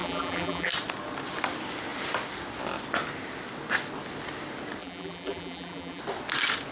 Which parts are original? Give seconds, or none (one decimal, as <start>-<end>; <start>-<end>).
0.7-4.8; 6.0-6.7